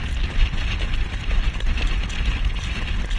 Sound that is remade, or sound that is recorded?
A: recorded